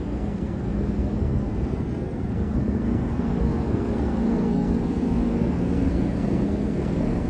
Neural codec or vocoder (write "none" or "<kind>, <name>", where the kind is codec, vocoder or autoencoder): codec, SNAC